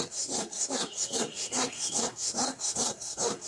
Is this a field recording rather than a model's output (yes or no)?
no